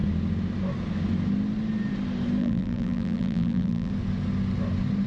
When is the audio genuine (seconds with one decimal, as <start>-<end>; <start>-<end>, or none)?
0.0-2.4; 3.9-5.1